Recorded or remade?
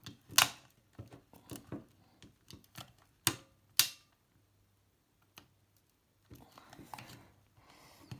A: recorded